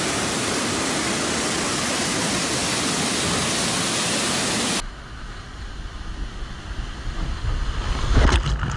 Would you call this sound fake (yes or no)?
no